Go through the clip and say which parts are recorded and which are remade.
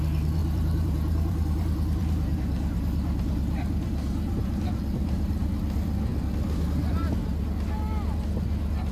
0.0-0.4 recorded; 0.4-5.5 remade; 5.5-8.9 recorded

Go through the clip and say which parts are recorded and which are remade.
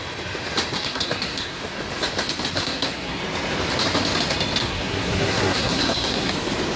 0.0-0.7 recorded; 0.7-1.6 remade; 1.6-2.5 recorded; 2.5-3.2 remade; 3.2-4.6 recorded; 4.6-6.3 remade; 6.3-6.8 recorded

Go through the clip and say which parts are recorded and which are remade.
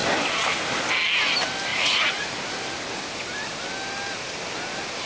0.0-1.7 recorded; 1.7-2.3 remade; 2.3-5.1 recorded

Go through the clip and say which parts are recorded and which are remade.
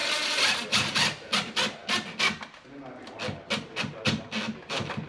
0.0-5.1 recorded